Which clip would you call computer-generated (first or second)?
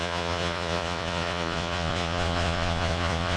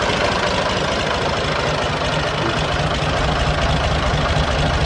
first